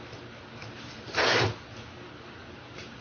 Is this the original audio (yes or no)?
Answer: yes